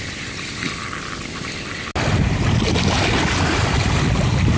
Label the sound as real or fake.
real